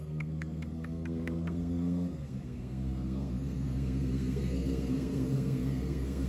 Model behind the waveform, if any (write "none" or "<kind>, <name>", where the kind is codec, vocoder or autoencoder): codec, SNAC